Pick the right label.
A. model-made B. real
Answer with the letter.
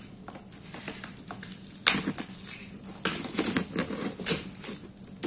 B